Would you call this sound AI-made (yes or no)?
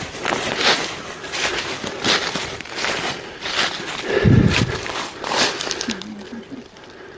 yes